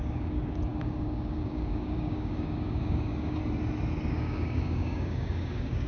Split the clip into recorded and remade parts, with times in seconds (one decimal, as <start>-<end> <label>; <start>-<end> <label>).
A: 0.0-3.4 remade; 3.4-4.1 recorded; 4.1-5.9 remade